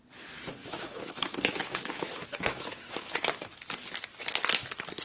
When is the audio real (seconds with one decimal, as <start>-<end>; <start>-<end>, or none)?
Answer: 0.0-0.6; 3.6-5.0